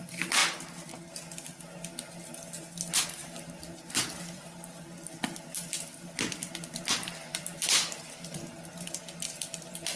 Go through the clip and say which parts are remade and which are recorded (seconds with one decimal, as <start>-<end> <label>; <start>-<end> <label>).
0.0-10.0 recorded